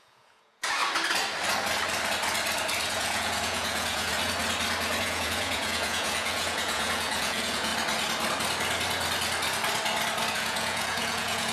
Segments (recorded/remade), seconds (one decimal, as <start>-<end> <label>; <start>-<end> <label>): 0.0-0.8 remade; 0.8-2.9 recorded; 2.9-4.1 remade; 4.1-5.0 recorded; 5.0-7.7 remade; 7.7-10.3 recorded; 10.3-11.5 remade